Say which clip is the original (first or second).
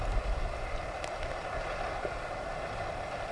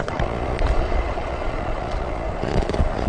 first